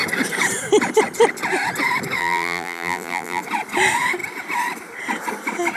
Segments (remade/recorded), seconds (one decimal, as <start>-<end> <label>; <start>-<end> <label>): 0.0-2.2 recorded; 2.2-3.4 remade; 3.4-5.8 recorded